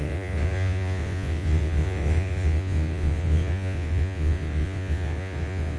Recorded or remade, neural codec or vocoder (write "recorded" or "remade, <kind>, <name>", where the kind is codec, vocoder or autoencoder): remade, vocoder, Vocos